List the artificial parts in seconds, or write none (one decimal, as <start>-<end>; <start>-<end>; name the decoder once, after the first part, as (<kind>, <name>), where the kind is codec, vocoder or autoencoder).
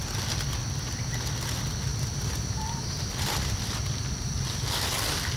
1.9-2.9 (vocoder, BigVGAN v2)